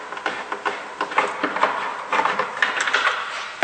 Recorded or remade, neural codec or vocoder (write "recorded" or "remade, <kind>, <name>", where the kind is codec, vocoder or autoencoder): recorded